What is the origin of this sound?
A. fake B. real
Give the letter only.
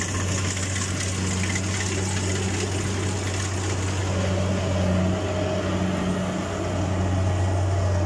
B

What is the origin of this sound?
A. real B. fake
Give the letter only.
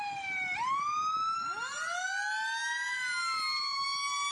A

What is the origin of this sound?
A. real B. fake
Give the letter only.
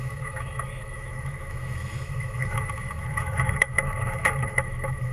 B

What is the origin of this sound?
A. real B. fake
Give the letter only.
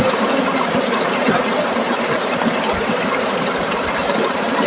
B